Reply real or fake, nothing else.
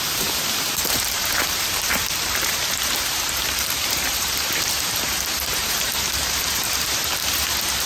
fake